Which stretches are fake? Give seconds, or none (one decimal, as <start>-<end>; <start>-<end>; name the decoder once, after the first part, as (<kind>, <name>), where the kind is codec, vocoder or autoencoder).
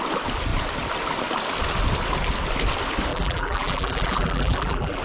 3.1-5.0 (vocoder, BigVGAN v2)